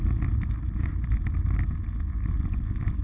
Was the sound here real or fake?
real